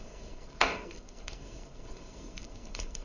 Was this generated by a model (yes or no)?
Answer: yes